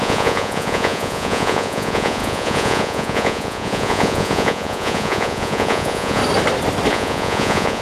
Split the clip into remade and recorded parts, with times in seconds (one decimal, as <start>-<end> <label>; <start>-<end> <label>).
0.0-6.2 remade; 6.2-6.9 recorded; 6.9-7.8 remade

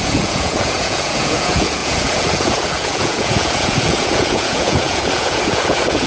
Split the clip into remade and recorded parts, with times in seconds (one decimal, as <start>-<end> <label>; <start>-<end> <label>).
0.0-6.1 remade

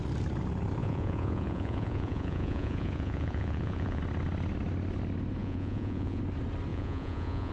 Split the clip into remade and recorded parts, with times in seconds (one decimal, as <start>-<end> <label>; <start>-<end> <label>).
0.0-0.8 recorded; 0.8-4.0 remade; 4.0-5.4 recorded; 5.4-6.2 remade; 6.2-6.7 recorded; 6.7-7.5 remade

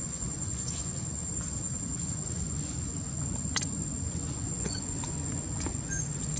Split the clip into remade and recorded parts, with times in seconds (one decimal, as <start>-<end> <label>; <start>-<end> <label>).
0.0-1.2 remade; 1.2-1.8 recorded; 1.8-6.4 remade

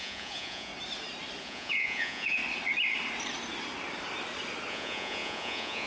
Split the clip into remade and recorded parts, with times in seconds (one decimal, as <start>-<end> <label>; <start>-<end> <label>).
0.0-0.7 remade; 0.7-1.4 recorded; 1.4-2.4 remade; 2.4-4.7 recorded; 4.7-5.9 remade

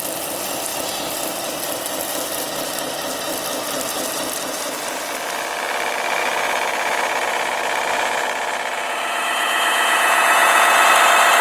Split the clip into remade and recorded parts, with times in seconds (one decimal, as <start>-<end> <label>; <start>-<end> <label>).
0.0-6.2 recorded; 6.2-10.9 remade; 10.9-11.4 recorded